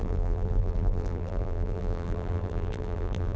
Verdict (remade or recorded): remade